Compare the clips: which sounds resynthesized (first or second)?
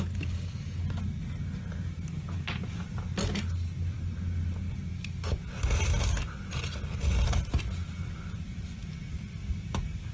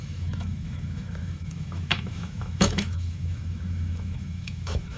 second